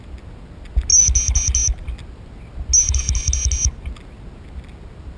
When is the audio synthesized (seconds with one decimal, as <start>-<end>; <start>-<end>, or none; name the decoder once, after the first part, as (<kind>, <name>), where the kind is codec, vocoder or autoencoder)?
none